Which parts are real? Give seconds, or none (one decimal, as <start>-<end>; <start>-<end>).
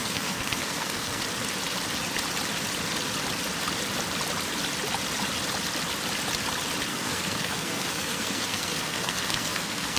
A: 1.2-6.9